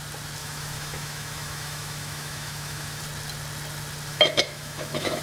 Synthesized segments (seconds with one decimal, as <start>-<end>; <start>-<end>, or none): 0.4-3.0; 4.1-5.2